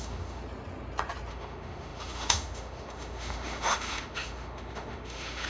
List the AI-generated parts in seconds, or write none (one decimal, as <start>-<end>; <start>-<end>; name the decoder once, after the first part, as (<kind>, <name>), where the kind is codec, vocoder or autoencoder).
0.0-0.4 (autoencoder, DAC-VAE); 1.3-5.5